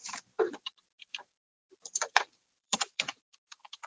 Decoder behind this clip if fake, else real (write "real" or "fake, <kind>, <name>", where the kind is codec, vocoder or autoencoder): fake, vocoder, BigVGAN v2